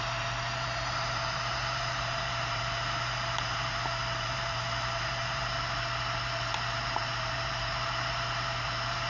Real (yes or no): no